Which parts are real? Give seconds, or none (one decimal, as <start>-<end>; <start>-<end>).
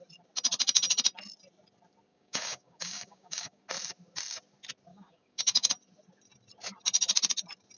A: 0.0-2.1; 3.6-4.9; 5.7-7.8